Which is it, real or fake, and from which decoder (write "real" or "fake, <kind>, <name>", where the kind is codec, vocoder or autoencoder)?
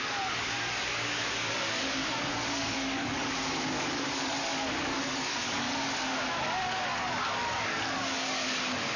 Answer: fake, codec, DAC